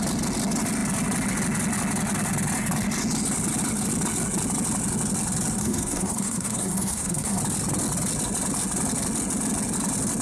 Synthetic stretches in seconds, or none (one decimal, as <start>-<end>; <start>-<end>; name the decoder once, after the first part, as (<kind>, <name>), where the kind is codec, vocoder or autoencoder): 5.6-7.4 (codec, SNAC)